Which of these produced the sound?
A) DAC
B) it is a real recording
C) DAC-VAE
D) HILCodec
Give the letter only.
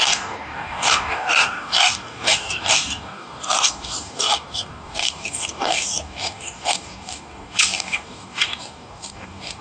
A